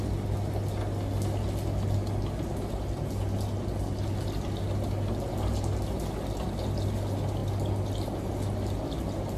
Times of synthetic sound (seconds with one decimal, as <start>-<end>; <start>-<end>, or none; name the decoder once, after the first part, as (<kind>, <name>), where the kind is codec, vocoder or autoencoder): none